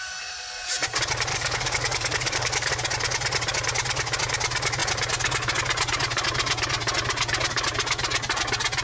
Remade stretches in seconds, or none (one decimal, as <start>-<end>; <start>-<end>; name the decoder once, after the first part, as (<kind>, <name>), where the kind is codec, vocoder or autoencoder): 1.3-2.7 (codec, DAC)